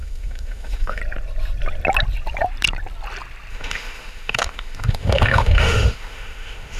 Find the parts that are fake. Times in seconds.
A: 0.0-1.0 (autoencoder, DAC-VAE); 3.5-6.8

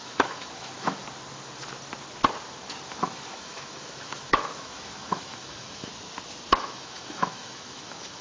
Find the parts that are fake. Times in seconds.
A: 0.0-1.0 (autoencoder, DAC-VAE); 2.9-5.9; 6.6-8.2

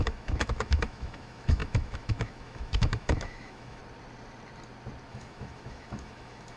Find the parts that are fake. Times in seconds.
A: 0.0-3.8 (autoencoder, DAC-VAE); 5.1-6.6

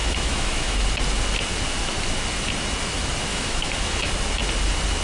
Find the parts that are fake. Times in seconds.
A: 0.0-0.8 (autoencoder, DAC-VAE); 3.3-4.1

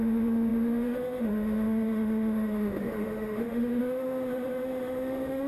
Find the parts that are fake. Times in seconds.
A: 0.0-5.5 (autoencoder, DAC-VAE)